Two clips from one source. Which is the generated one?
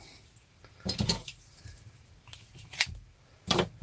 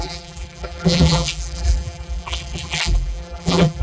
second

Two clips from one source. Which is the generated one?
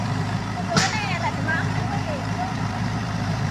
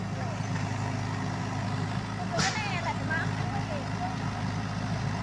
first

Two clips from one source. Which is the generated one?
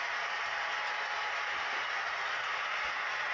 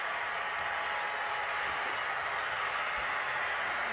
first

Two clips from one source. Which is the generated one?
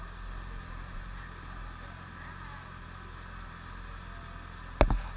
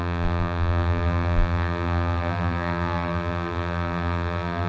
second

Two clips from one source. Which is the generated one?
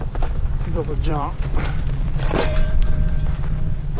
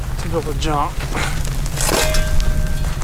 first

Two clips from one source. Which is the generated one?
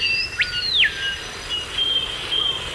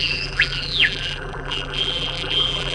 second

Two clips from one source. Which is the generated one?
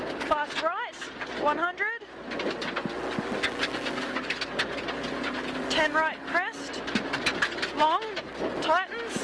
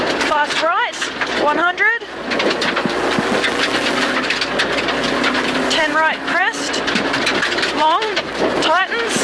second